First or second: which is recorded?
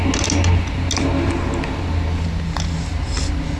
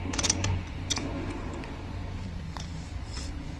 first